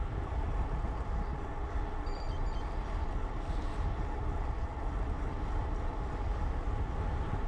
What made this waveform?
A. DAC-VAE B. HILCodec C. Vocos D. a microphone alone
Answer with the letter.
D